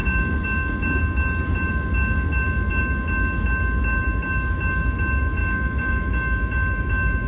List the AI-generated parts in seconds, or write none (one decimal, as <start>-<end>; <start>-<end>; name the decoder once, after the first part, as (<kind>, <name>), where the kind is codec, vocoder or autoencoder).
0.0-1.0 (autoencoder, DAC-VAE); 1.7-2.8; 5.4-6.1